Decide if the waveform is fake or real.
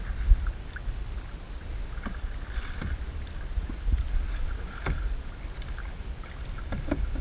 real